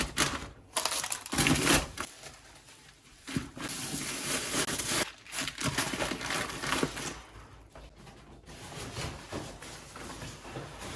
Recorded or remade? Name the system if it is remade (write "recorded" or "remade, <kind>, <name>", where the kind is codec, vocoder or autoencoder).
recorded